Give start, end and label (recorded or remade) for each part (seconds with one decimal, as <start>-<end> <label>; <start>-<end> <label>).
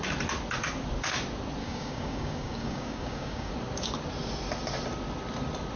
0.0-1.6 recorded; 1.6-3.5 remade; 3.5-5.8 recorded